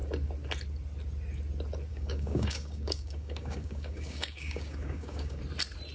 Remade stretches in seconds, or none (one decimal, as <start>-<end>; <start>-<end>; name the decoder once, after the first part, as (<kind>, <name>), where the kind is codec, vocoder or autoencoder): 1.9-5.4 (codec, DAC)